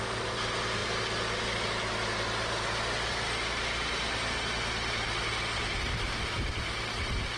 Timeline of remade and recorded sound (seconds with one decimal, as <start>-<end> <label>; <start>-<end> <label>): 0.0-7.4 recorded